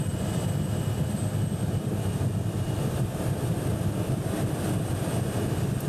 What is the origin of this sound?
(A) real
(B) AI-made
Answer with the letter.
A